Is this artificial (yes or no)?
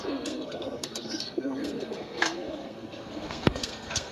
yes